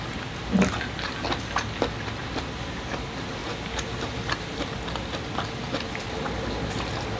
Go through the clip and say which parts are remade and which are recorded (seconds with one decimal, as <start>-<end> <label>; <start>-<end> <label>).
0.0-3.4 recorded; 3.4-4.0 remade; 4.0-7.2 recorded